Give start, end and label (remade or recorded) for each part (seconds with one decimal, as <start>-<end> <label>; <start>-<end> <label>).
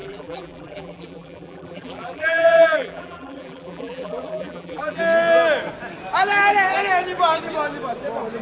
0.0-5.0 remade; 5.0-8.4 recorded